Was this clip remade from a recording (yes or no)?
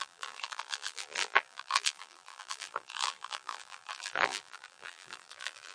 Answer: yes